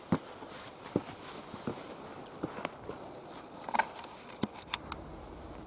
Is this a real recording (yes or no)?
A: yes